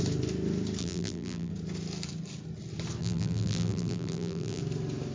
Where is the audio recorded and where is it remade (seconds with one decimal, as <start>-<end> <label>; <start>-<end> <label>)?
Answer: 0.0-0.8 recorded; 0.8-1.5 remade; 1.5-3.0 recorded; 3.0-4.6 remade; 4.6-5.1 recorded